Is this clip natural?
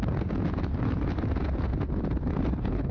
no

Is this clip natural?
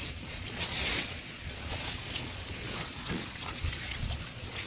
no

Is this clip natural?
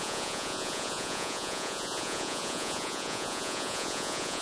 no